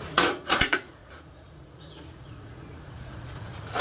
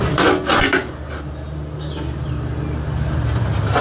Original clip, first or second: second